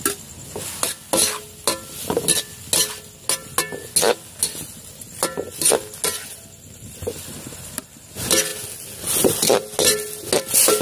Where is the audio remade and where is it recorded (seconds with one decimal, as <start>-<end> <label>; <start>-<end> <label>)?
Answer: 0.0-10.8 recorded